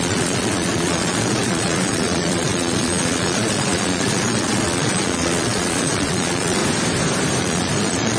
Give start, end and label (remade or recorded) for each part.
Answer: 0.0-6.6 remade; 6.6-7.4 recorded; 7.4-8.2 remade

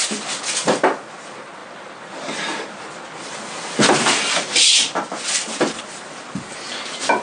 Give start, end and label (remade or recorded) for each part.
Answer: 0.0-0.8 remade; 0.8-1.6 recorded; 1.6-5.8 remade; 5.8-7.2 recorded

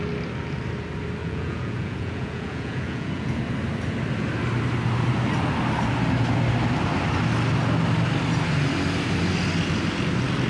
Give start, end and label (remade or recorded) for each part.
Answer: 0.0-1.2 recorded; 1.2-3.4 remade; 3.4-10.5 recorded